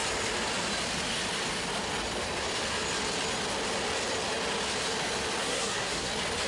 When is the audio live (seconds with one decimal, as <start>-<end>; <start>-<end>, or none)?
0.0-5.4; 6.1-6.5